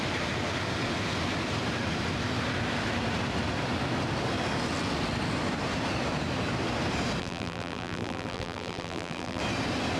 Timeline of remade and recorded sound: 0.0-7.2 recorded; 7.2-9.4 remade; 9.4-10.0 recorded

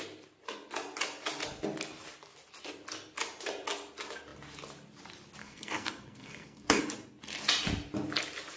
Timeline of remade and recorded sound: 0.0-5.4 recorded; 5.4-6.8 remade; 6.8-8.6 recorded

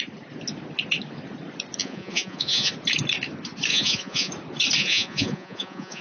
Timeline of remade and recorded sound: 0.0-1.8 recorded; 1.8-2.7 remade; 2.7-3.7 recorded; 3.7-4.3 remade; 4.3-4.8 recorded; 4.8-6.0 remade

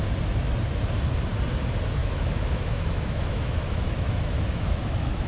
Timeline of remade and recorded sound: 0.0-2.0 recorded; 2.0-5.3 remade

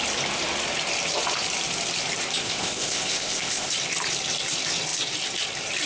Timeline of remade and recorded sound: 0.0-2.4 recorded; 2.4-3.7 remade; 3.7-5.9 recorded